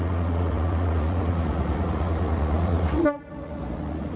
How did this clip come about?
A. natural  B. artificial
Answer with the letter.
B